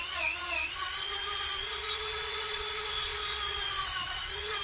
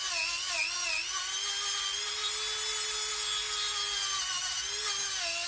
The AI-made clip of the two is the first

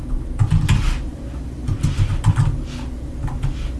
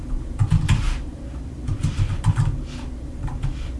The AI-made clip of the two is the second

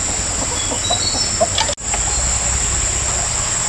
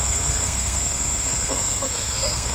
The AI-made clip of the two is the second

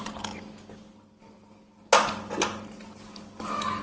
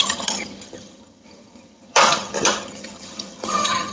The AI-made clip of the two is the second